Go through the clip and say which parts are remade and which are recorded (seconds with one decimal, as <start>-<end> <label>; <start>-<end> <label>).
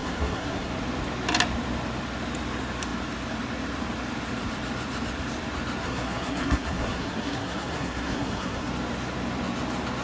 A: 0.0-0.7 remade; 0.7-5.8 recorded; 5.8-8.7 remade; 8.7-10.0 recorded